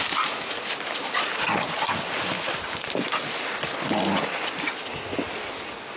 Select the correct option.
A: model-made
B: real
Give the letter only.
B